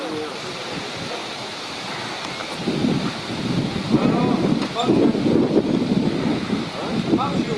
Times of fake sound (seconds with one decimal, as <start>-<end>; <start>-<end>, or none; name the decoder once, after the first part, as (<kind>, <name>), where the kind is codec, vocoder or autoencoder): 1.2-1.7 (autoencoder, DAC-VAE)